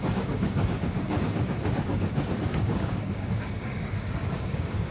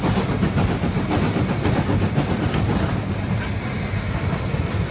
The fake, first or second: first